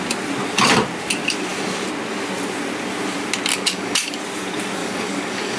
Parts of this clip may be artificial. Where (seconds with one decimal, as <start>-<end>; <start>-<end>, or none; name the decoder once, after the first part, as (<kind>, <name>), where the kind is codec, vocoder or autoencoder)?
3.5-4.2 (codec, DAC); 4.8-5.6